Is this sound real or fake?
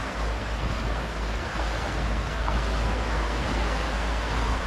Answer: fake